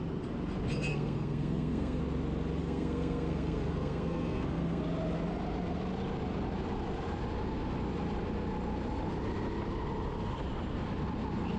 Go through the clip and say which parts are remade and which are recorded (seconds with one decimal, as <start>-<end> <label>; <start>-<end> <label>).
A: 0.0-0.9 recorded; 0.9-2.0 remade; 2.0-2.6 recorded; 2.6-4.8 remade; 4.8-11.6 recorded